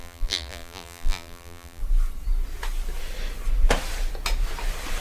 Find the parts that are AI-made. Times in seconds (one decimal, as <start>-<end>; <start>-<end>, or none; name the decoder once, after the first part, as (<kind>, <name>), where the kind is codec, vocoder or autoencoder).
0.0-1.8 (vocoder, BigVGAN v2)